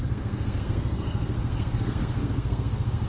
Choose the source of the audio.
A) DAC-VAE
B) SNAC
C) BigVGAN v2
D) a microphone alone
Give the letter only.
B